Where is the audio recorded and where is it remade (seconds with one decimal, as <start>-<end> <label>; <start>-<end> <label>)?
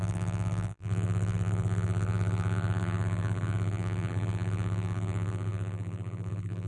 0.0-6.7 remade